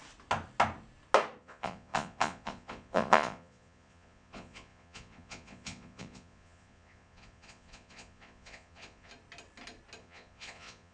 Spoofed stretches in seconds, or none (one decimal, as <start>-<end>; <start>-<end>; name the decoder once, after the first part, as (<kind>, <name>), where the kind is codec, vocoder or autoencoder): 1.4-9.1 (vocoder, Vocos); 10.0-10.9